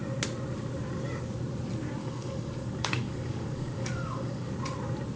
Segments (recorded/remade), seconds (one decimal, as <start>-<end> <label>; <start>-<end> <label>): 0.0-2.0 recorded; 2.0-4.5 remade; 4.5-5.2 recorded